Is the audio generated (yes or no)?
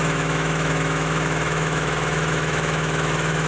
yes